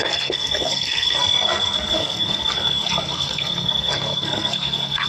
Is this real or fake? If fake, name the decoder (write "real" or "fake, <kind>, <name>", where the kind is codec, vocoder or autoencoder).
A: fake, codec, SNAC